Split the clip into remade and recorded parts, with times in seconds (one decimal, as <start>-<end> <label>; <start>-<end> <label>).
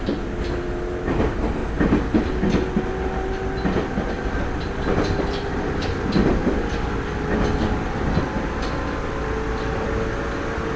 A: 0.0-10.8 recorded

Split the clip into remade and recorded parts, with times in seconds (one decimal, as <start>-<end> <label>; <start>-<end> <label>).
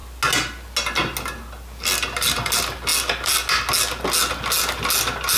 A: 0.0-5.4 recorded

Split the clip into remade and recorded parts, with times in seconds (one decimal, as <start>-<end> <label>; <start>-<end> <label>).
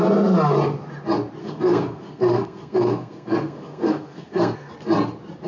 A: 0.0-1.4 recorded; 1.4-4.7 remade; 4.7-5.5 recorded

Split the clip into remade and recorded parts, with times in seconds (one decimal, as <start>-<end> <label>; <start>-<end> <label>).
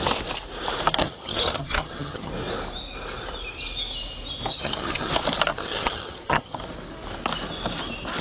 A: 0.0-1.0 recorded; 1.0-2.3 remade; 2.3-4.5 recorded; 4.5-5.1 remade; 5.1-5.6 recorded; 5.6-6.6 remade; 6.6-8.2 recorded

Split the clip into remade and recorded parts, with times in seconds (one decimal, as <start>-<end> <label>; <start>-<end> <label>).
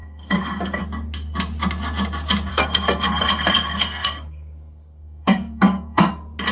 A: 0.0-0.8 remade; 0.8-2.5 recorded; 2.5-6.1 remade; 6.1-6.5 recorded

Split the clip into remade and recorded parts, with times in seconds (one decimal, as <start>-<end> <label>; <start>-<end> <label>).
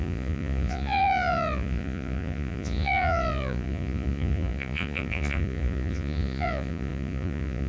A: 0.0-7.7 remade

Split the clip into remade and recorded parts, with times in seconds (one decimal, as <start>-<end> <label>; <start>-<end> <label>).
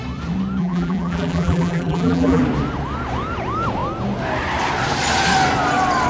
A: 0.0-0.6 recorded; 0.6-2.4 remade; 2.4-6.1 recorded